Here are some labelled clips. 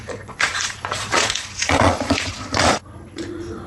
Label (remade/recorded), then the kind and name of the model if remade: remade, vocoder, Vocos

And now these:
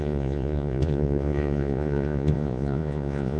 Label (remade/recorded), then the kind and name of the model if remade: remade, vocoder, Vocos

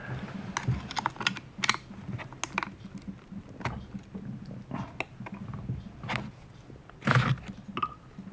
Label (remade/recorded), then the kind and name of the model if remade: recorded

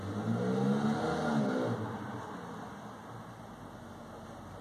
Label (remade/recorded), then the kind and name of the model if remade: recorded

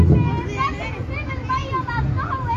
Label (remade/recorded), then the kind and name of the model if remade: recorded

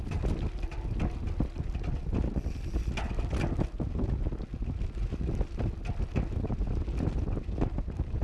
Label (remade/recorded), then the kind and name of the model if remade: recorded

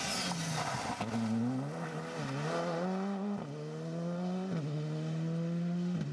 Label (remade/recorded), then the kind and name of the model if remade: recorded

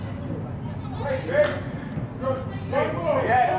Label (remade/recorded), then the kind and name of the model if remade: recorded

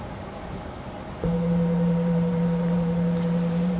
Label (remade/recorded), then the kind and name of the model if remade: remade, vocoder, BigVGAN v2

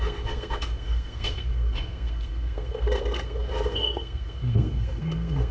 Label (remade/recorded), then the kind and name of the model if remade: remade, codec, SNAC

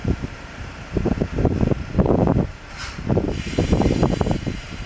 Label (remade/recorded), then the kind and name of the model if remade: remade, vocoder, BigVGAN v2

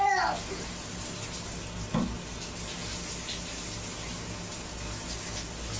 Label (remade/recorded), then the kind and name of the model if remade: recorded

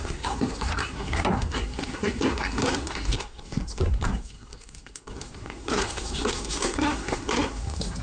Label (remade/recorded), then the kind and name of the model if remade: remade, codec, SNAC